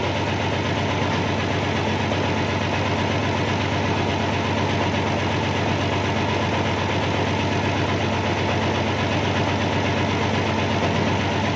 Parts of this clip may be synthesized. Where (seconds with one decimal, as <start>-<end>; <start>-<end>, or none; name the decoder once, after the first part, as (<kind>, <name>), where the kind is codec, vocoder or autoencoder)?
none